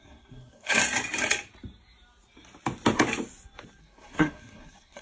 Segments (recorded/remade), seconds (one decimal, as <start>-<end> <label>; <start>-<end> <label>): 0.0-0.8 remade; 0.8-3.8 recorded; 3.8-5.0 remade